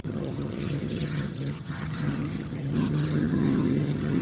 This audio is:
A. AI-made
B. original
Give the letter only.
A